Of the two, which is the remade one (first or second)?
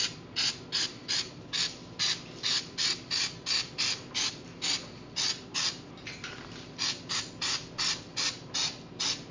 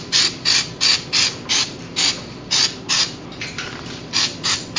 second